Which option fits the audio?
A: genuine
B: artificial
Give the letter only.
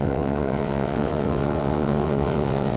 B